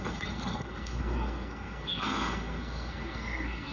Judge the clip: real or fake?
fake